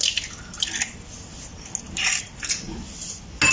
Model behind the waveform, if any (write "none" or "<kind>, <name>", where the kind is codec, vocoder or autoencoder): none